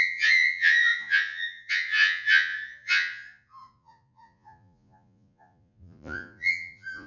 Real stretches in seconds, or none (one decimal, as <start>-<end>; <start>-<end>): none